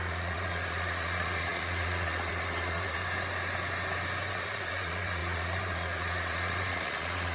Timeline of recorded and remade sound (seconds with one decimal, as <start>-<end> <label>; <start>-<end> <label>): 0.0-3.0 remade; 3.0-4.3 recorded; 4.3-7.3 remade